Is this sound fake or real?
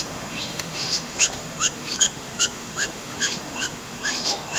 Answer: fake